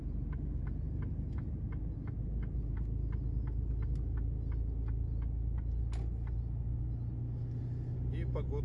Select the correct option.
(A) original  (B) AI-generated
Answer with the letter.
A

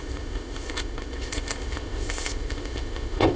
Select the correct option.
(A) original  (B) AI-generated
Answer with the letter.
B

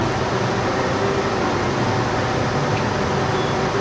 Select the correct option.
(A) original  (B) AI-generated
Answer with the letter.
A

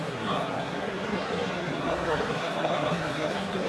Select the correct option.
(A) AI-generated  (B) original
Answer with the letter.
A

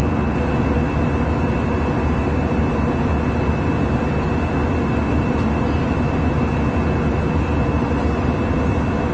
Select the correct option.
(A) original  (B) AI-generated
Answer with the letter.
A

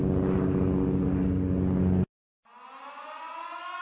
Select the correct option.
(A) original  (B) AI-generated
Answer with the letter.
A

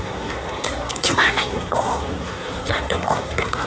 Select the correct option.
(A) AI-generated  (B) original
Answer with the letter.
A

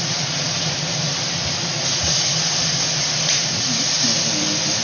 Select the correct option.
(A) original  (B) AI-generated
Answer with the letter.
A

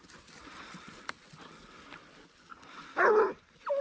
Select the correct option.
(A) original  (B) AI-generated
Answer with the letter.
A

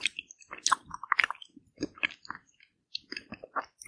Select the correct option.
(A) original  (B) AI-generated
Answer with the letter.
B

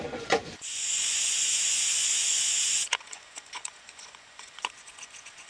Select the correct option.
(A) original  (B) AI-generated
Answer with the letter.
B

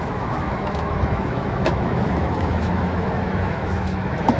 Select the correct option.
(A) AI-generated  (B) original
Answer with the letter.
A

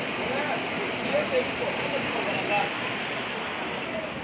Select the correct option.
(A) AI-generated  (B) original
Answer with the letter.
B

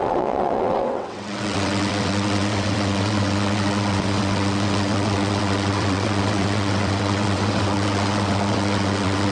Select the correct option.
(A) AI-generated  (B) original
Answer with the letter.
A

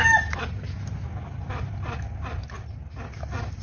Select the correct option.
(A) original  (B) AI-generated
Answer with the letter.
A